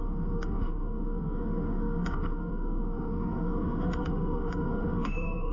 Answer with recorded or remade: remade